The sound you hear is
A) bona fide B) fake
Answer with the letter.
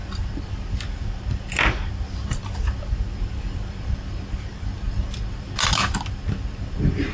B